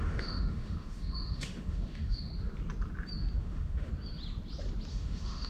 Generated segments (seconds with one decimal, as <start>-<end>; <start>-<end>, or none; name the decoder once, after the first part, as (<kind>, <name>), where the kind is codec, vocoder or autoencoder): 0.0-2.3 (autoencoder, DAC-VAE); 3.4-3.9; 4.9-5.5